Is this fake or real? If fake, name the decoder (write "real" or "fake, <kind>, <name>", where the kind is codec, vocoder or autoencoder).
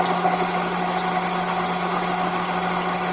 real